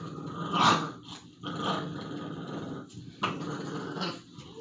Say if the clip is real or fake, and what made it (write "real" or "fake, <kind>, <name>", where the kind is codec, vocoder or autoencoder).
real